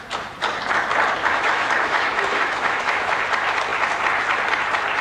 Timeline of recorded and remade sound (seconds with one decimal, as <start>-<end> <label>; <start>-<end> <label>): 0.0-1.2 recorded; 1.2-3.2 remade; 3.2-5.0 recorded